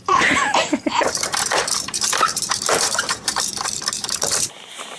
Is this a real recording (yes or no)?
no